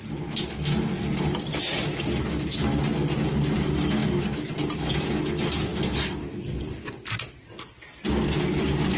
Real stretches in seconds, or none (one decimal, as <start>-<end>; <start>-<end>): 0.0-1.5; 2.2-9.0